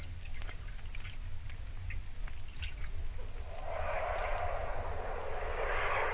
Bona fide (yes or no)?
yes